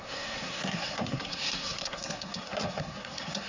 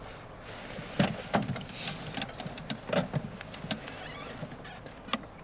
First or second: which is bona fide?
second